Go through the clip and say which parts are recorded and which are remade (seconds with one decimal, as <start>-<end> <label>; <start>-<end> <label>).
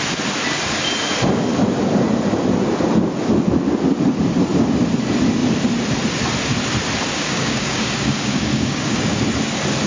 0.0-7.1 recorded; 7.1-9.2 remade; 9.2-9.9 recorded